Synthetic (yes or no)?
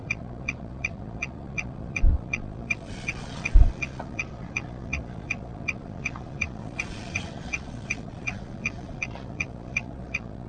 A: yes